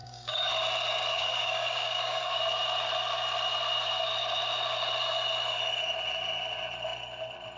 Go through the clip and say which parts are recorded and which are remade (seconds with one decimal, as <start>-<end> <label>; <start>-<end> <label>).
0.0-0.5 remade; 0.5-1.1 recorded; 1.1-2.4 remade; 2.4-7.6 recorded